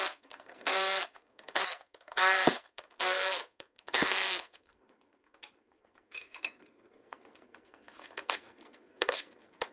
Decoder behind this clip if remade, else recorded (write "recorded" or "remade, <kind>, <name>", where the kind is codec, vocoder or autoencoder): remade, codec, SNAC